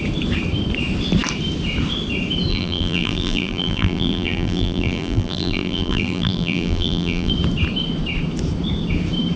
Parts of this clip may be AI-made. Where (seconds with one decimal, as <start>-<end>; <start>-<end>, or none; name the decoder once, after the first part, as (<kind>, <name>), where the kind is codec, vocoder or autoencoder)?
2.5-7.3 (vocoder, BigVGAN v2)